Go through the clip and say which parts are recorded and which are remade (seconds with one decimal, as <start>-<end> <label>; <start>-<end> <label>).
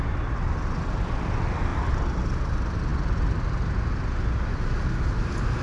0.0-5.6 recorded